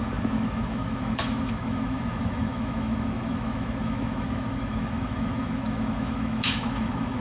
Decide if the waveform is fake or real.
fake